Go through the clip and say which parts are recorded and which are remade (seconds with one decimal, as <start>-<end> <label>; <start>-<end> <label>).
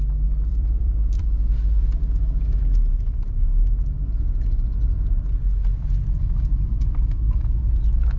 0.0-0.5 recorded; 0.5-2.0 remade; 2.0-8.2 recorded